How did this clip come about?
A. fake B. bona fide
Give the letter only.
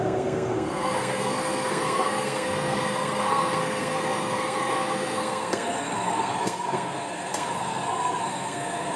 A